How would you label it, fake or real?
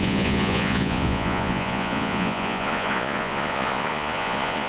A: fake